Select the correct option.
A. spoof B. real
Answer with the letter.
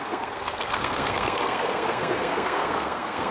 A